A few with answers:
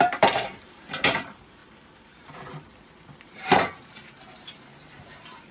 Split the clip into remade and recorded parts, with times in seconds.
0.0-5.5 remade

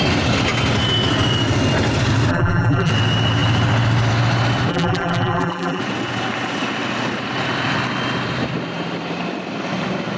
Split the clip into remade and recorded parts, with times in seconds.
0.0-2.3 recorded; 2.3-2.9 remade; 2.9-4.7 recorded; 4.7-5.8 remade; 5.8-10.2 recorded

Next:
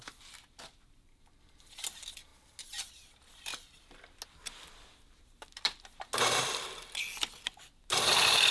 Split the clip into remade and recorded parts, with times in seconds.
0.0-2.3 remade; 2.3-7.4 recorded; 7.4-8.5 remade

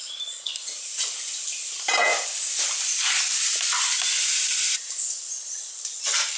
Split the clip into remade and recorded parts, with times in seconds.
0.0-0.8 remade; 0.8-6.4 recorded

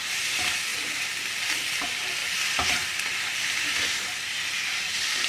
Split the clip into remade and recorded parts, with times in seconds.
0.0-5.3 recorded

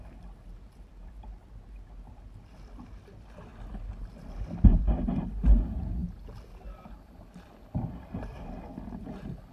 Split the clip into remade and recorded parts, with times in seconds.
0.0-9.5 recorded

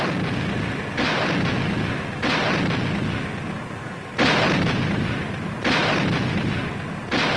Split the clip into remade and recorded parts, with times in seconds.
0.0-5.8 recorded; 5.8-6.7 remade; 6.7-7.4 recorded